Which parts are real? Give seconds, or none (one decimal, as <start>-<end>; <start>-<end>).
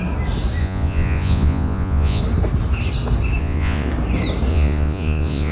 0.0-0.6; 2.2-3.4; 3.9-4.5